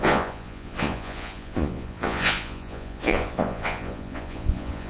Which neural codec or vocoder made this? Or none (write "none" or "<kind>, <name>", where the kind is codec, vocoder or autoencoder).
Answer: vocoder, Vocos